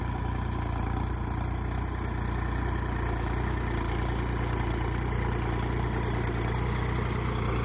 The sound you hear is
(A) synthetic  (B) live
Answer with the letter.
B